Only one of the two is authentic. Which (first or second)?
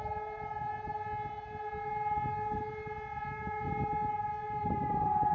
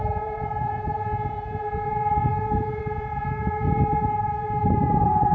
first